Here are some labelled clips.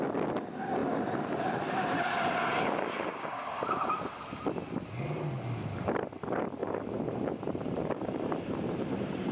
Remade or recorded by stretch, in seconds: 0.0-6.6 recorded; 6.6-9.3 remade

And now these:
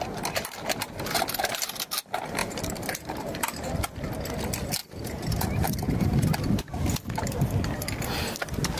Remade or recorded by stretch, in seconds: 0.0-2.4 recorded; 2.4-3.7 remade; 3.7-4.8 recorded; 4.8-6.6 remade; 6.6-8.8 recorded

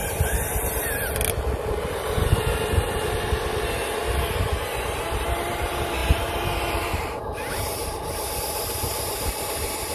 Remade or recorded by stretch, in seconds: 0.0-4.8 recorded; 4.8-9.9 remade

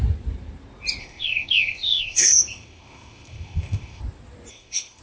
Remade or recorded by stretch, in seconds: 0.0-1.0 recorded; 1.0-4.0 remade; 4.0-4.5 recorded; 4.5-5.0 remade

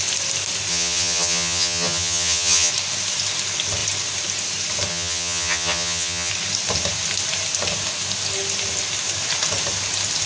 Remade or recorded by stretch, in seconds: 0.0-0.7 recorded; 0.7-2.7 remade; 2.7-4.9 recorded; 4.9-6.3 remade; 6.3-10.3 recorded

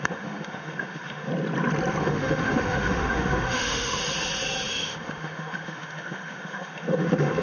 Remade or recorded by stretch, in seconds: 0.0-1.3 remade; 1.3-2.0 recorded; 2.0-4.0 remade; 4.0-4.7 recorded; 4.7-7.4 remade

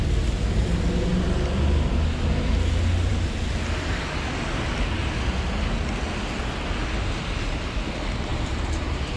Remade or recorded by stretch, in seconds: 0.0-8.3 recorded; 8.3-9.2 remade

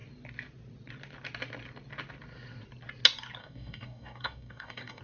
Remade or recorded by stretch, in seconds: 0.0-3.4 recorded; 3.4-5.0 remade